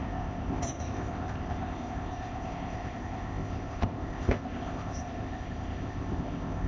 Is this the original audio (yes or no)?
no